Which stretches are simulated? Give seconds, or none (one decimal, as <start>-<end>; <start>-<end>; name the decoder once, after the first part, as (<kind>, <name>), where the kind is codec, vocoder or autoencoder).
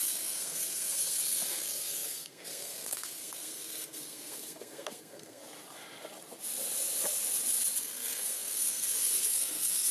0.0-5.4 (codec, SNAC); 7.8-9.9